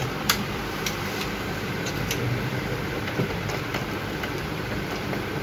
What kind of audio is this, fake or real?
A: fake